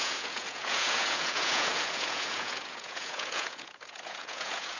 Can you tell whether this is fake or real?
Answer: fake